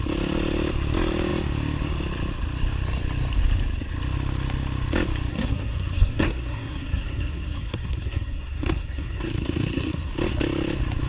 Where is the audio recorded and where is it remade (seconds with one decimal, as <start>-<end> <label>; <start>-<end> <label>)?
0.0-5.3 recorded; 5.3-10.1 remade; 10.1-11.1 recorded